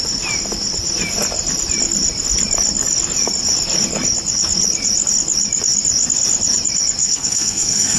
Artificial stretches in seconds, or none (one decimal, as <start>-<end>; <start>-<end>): 7.0-8.0